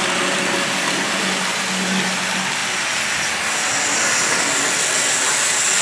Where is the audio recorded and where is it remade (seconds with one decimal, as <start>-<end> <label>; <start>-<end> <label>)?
0.0-5.8 recorded